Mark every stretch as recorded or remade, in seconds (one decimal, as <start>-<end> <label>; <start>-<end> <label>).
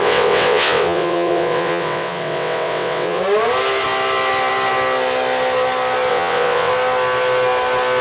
0.0-3.2 remade; 3.2-6.1 recorded; 6.1-6.7 remade; 6.7-8.0 recorded